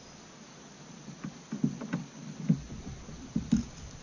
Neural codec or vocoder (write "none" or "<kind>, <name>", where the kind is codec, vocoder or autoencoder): none